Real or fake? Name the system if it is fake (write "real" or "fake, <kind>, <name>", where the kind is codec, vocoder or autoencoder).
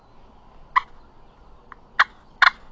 real